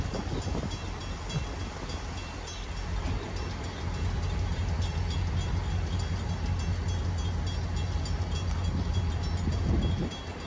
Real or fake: real